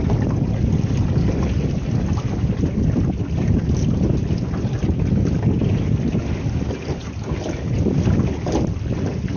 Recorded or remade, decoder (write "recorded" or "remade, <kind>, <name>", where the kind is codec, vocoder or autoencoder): recorded